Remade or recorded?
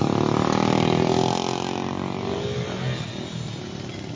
recorded